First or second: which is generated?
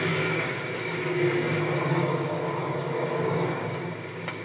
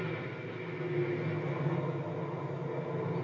first